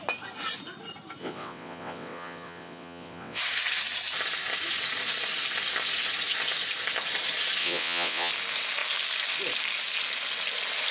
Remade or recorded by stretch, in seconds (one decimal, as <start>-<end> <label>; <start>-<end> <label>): 0.0-1.2 recorded; 1.2-3.4 remade; 3.4-7.6 recorded; 7.6-8.3 remade; 8.3-10.9 recorded